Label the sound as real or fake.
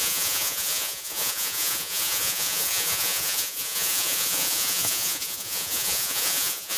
fake